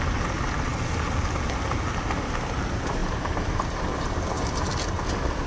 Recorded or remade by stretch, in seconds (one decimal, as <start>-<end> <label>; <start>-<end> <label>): 0.0-3.0 recorded; 3.0-4.7 remade; 4.7-5.5 recorded

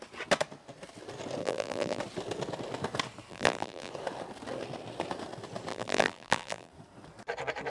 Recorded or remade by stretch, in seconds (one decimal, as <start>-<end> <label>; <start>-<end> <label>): 0.0-1.4 recorded; 1.4-2.0 remade; 2.0-3.3 recorded; 3.3-3.9 remade; 3.9-5.7 recorded; 5.7-6.7 remade; 6.7-7.7 recorded

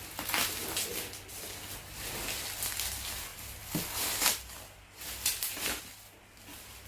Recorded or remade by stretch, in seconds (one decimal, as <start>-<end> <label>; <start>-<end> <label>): 0.0-6.9 recorded

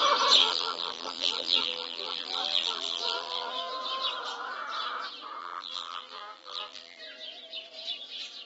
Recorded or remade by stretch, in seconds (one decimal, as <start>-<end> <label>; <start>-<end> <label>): 0.0-0.4 recorded; 0.4-3.7 remade; 3.7-5.4 recorded; 5.4-7.0 remade; 7.0-8.5 recorded

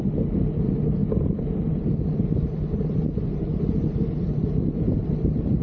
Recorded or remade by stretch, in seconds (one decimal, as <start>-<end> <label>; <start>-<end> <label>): 0.0-1.0 recorded; 1.0-3.2 remade; 3.2-5.6 recorded